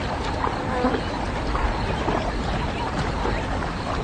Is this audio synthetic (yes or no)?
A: no